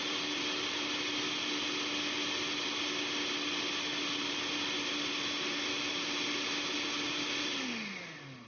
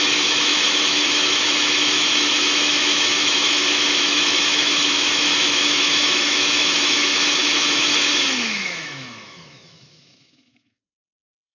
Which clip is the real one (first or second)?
first